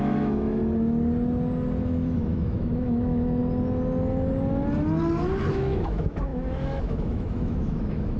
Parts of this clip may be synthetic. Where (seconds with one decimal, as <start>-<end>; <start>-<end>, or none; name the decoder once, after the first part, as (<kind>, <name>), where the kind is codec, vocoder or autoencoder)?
0.0-0.6 (autoencoder, DAC-VAE); 1.8-3.4; 5.5-8.2